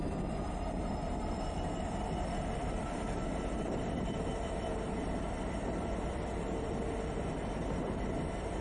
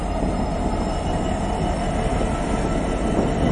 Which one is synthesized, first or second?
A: first